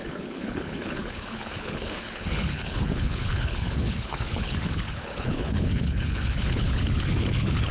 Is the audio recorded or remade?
remade